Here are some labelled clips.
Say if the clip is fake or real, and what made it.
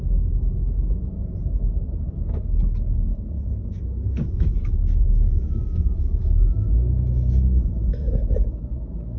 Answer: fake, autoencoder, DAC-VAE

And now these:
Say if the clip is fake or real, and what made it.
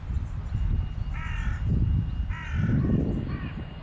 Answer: real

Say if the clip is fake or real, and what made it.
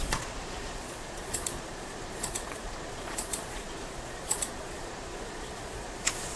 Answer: fake, vocoder, Vocos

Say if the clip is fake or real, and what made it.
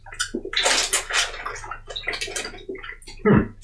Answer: real